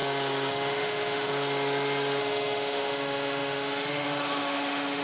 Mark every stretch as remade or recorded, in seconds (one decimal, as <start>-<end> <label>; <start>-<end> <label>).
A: 0.0-0.5 recorded; 0.5-1.3 remade; 1.3-2.2 recorded; 2.2-5.0 remade